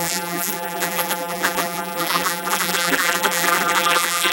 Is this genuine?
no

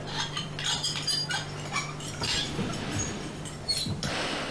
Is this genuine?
yes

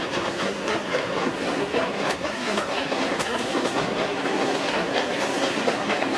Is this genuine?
no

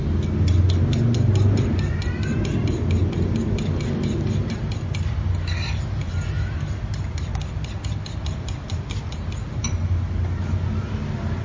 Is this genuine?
yes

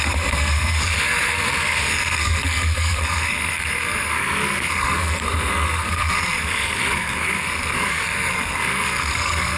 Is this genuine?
no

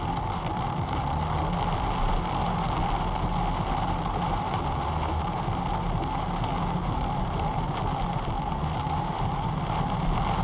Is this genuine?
yes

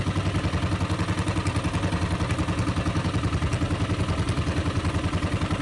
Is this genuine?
yes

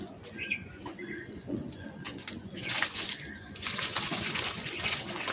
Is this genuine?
no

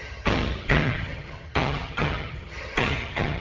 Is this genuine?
no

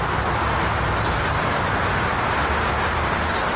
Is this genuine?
yes